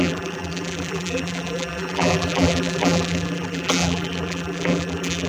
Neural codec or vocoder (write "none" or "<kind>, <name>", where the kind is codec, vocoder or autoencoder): vocoder, BigVGAN v2